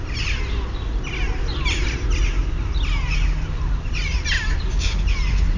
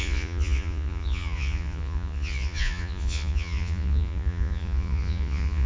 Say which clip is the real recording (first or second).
first